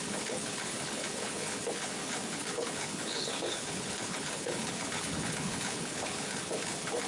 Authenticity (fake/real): fake